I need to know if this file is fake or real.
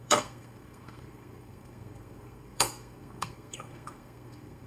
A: fake